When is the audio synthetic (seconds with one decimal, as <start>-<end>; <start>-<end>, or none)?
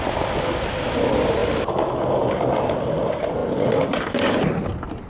none